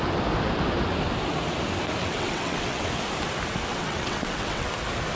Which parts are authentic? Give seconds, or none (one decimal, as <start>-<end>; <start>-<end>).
0.0-2.0; 3.0-3.7; 4.7-5.2